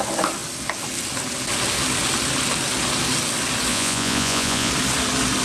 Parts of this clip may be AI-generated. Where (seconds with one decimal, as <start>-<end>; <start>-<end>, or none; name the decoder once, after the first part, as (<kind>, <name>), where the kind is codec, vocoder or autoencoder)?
3.7-4.7 (vocoder, Vocos)